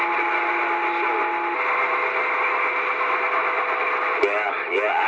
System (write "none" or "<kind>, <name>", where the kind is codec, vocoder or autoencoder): none